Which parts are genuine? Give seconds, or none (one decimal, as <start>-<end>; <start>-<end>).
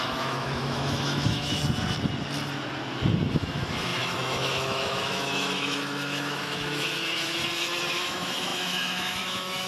1.6-3.3; 7.4-7.9